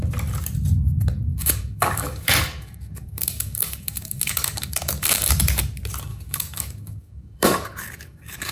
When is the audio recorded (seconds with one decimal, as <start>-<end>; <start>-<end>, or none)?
0.0-1.3; 5.3-6.1